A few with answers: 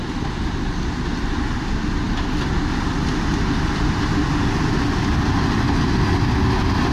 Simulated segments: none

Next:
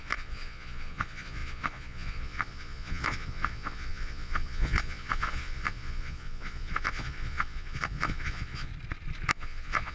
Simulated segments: 0.0-8.7 (vocoder, Vocos); 9.3-9.9

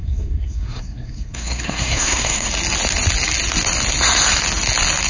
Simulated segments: 0.0-2.5 (codec, SNAC)